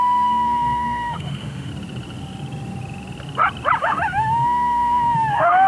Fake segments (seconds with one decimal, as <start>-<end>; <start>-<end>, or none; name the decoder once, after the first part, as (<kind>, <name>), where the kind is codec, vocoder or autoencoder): 0.0-1.7 (autoencoder, DAC-VAE); 3.8-5.7